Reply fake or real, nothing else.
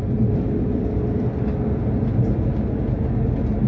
real